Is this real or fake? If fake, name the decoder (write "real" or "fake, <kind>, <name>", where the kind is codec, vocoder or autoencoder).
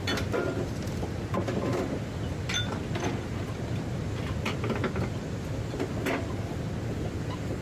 real